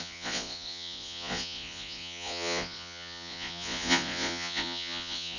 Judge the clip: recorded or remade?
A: remade